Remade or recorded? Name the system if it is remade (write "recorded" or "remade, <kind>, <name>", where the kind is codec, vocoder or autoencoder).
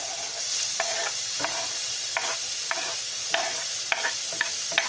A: recorded